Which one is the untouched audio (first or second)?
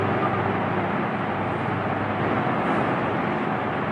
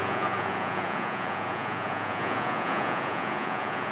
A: first